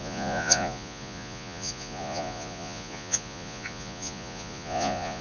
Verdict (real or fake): fake